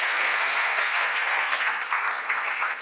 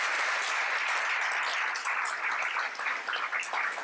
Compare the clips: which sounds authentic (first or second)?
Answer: second